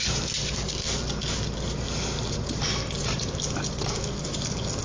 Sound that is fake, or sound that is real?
real